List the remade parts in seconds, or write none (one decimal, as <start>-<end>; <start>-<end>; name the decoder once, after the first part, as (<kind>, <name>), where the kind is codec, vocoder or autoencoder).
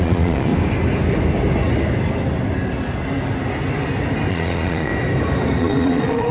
0.0-0.5 (vocoder, Vocos); 4.3-4.9; 5.6-6.3